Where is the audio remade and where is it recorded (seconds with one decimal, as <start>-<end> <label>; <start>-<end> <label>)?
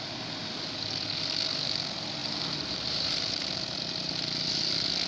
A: 0.0-2.2 recorded; 2.2-3.5 remade; 3.5-5.1 recorded